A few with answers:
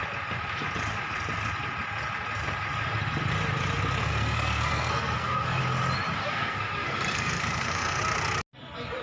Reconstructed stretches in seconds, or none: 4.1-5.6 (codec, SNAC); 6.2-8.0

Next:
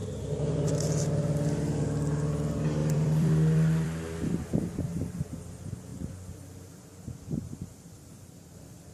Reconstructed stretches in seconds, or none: 0.0-0.7 (vocoder, BigVGAN v2); 2.8-4.3; 5.9-8.9

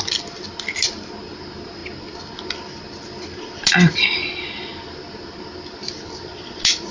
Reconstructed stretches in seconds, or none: none

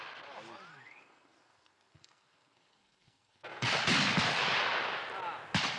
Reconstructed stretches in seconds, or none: 0.7-3.7 (codec, SNAC)

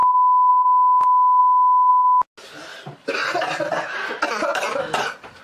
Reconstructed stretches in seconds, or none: none